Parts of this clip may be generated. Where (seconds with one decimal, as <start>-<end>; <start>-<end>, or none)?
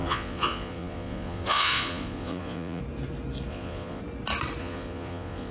0.0-2.8; 3.5-4.0; 4.6-5.5